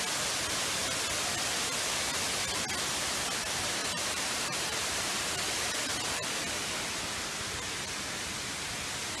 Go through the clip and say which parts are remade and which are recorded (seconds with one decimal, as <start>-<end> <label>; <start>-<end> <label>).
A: 0.0-3.8 recorded; 3.8-5.2 remade; 5.2-9.2 recorded